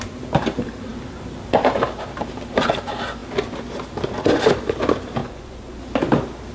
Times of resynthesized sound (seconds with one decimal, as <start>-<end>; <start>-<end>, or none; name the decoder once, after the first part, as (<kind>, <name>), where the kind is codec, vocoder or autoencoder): 5.2-5.8 (vocoder, Vocos)

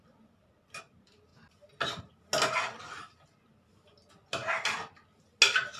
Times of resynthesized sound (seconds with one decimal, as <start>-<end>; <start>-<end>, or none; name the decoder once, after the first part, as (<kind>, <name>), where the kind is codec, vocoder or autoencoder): none

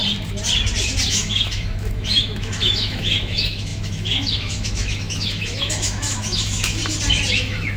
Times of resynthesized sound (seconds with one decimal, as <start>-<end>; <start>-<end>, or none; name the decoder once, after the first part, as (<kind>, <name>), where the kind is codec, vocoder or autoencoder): 1.1-6.8 (autoencoder, DAC-VAE); 7.3-7.8